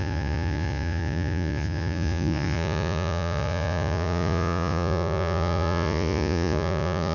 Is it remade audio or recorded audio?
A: remade